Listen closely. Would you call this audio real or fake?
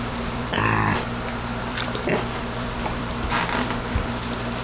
fake